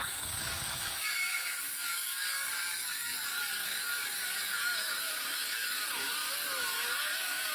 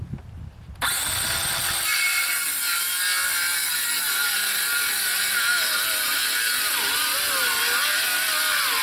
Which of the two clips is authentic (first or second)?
second